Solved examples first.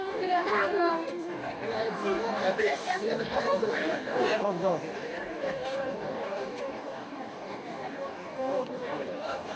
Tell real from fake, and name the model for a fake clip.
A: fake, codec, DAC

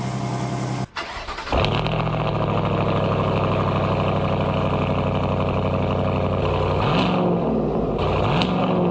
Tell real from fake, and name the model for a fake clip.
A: real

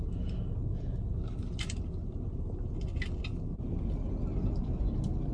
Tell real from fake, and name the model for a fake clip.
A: real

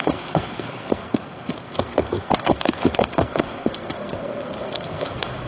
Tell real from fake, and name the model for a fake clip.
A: fake, codec, SNAC